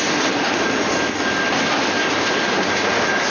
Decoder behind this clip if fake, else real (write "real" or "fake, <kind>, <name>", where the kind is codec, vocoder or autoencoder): real